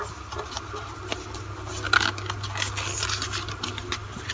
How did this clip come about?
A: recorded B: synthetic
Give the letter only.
A